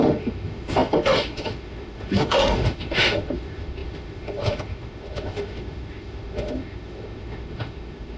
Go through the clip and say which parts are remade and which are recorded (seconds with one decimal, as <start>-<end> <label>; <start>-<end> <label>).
0.0-8.2 remade